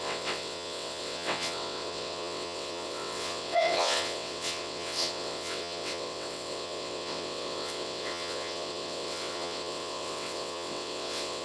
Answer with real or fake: fake